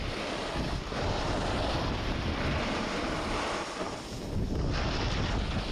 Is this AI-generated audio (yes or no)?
no